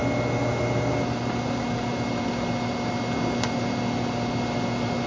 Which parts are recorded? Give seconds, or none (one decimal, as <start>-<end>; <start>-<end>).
0.0-5.1